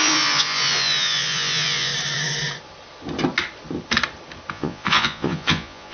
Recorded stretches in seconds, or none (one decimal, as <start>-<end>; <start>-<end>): 1.9-4.5